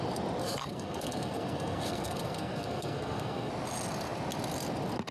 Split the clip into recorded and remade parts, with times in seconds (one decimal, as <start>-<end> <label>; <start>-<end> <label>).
0.0-0.4 recorded; 0.4-3.5 remade; 3.5-5.1 recorded